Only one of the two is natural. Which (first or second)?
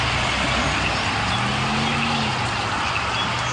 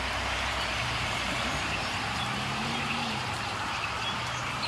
first